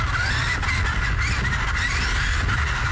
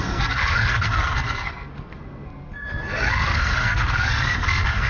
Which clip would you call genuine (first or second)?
first